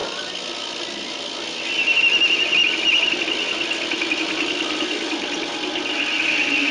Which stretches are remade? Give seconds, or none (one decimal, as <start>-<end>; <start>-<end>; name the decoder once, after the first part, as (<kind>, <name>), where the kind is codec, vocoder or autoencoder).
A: none